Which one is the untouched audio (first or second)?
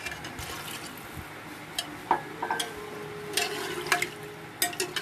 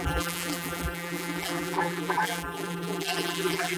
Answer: first